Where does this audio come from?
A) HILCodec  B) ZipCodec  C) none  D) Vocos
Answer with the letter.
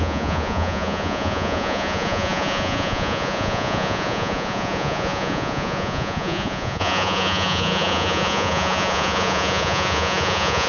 D